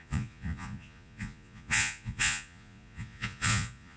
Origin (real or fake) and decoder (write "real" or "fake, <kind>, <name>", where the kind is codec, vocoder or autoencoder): fake, vocoder, Vocos